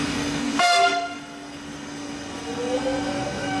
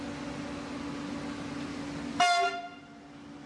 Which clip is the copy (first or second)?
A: first